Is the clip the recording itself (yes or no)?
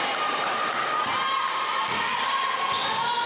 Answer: yes